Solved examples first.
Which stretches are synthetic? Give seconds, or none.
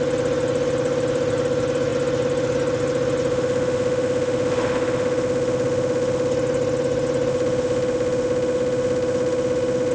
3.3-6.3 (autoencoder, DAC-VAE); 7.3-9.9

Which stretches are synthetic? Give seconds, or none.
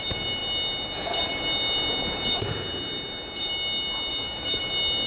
4.1-4.6 (autoencoder, DAC-VAE)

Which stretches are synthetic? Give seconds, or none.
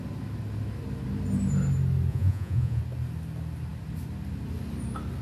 2.1-2.8 (vocoder, Vocos)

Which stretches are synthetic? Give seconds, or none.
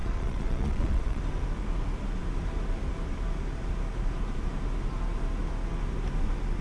0.0-1.2 (vocoder, Vocos)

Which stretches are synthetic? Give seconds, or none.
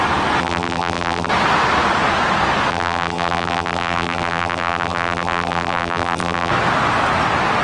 0.4-1.3 (vocoder, BigVGAN v2); 2.7-6.5